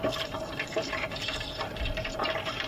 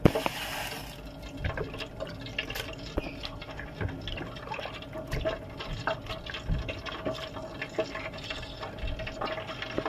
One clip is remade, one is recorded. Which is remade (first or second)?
first